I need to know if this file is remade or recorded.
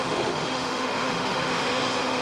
remade